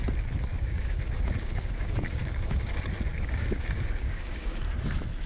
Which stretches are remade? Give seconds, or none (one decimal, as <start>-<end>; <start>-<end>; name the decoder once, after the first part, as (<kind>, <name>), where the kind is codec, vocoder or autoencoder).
0.5-2.7 (codec, DAC); 3.1-4.5

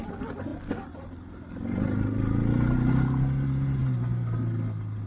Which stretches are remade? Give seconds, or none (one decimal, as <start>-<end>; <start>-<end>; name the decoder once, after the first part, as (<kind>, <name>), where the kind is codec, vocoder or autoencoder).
none

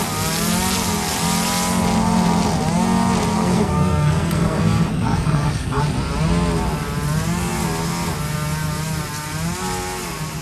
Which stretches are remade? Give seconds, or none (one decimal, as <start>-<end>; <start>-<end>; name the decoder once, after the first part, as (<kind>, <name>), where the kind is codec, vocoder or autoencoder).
3.3-5.8 (codec, SNAC)